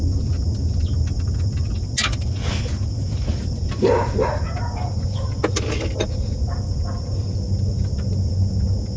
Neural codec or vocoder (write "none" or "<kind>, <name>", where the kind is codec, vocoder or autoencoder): none